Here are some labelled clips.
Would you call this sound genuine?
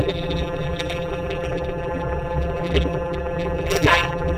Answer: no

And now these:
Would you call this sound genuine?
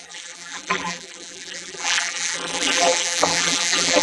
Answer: no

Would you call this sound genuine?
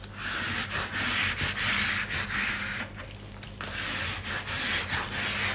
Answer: yes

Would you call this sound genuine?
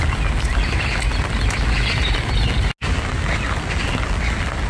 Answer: yes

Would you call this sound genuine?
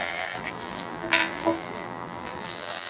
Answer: no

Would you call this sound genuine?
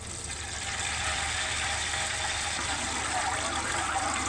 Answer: no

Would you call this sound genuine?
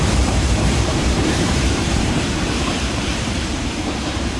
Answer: no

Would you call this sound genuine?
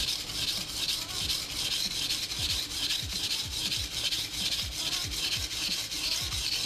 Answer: no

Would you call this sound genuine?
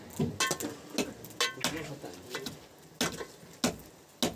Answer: yes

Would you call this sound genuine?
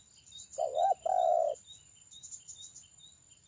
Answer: no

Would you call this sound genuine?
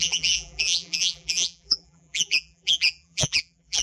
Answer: no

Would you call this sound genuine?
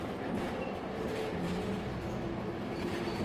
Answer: no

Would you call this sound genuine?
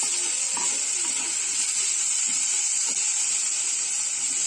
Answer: yes